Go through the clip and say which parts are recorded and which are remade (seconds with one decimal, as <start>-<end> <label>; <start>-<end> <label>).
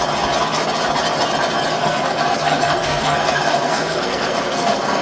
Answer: 0.0-1.8 recorded; 1.8-5.0 remade